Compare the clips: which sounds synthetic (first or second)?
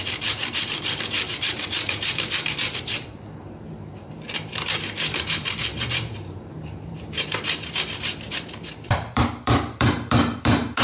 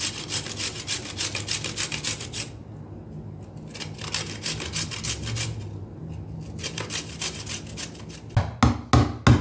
first